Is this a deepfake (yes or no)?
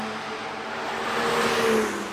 no